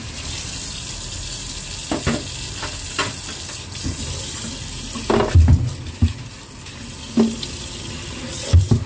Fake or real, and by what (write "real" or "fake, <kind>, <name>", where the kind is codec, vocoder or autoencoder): real